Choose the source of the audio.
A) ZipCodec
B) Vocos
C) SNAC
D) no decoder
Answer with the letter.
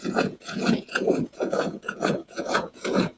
B